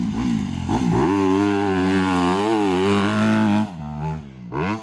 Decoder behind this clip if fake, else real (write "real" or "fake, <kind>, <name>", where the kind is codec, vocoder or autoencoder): real